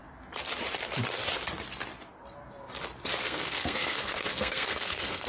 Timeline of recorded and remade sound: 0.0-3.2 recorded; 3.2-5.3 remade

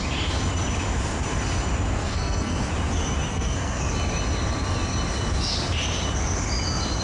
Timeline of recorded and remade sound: 0.0-2.0 recorded; 2.0-2.7 remade; 2.7-3.3 recorded; 3.3-3.8 remade; 3.8-7.0 recorded

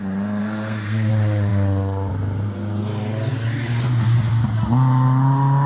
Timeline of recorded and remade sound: 0.0-0.4 recorded; 0.4-1.1 remade; 1.1-5.7 recorded

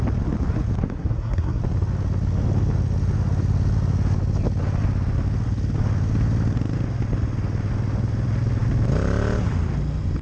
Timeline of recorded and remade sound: 0.0-0.8 recorded; 0.8-1.6 remade; 1.6-10.2 recorded

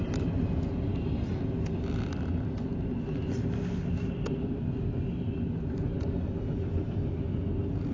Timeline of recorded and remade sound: 0.0-7.9 recorded

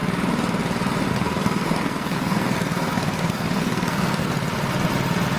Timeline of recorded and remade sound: 0.0-1.1 recorded; 1.1-4.3 remade; 4.3-5.4 recorded

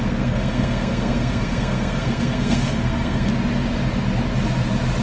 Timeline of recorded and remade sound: 0.0-3.3 remade; 3.3-5.0 recorded

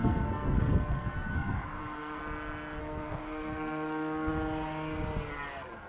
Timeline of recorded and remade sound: 0.0-2.2 remade; 2.2-2.8 recorded; 2.8-4.3 remade; 4.3-5.9 recorded